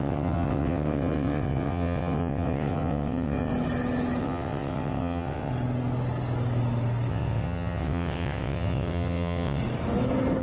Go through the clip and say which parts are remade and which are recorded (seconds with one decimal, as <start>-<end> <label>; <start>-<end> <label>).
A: 0.0-3.5 remade; 3.5-4.2 recorded; 4.2-5.5 remade; 5.5-7.1 recorded; 7.1-9.6 remade; 9.6-10.4 recorded